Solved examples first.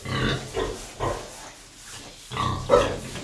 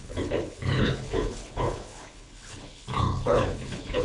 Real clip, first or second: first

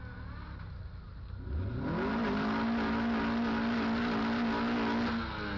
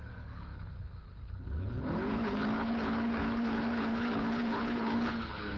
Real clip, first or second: first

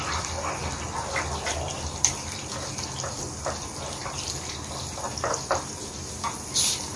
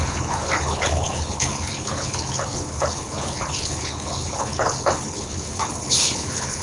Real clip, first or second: first